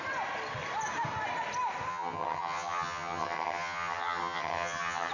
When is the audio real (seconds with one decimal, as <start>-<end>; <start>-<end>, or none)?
0.0-1.9